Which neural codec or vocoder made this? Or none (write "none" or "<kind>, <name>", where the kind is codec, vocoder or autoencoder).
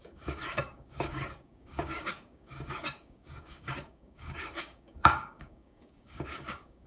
codec, DAC